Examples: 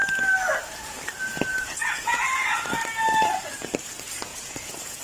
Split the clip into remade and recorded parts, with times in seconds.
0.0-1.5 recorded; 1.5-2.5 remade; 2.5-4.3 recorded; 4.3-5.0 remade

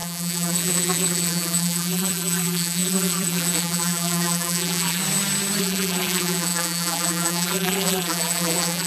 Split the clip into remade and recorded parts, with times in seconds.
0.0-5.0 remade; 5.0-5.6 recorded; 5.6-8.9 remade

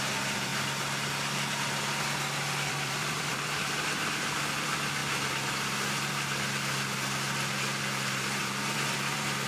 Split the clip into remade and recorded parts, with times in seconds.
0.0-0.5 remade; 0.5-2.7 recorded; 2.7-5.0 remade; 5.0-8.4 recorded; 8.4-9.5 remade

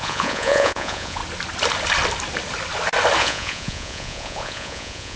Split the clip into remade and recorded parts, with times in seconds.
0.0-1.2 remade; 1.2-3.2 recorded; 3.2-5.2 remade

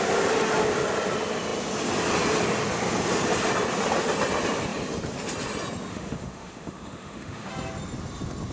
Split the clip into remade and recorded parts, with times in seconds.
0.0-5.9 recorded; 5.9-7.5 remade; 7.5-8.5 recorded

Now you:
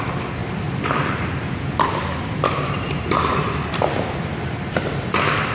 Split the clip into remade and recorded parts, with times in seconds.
0.0-5.5 remade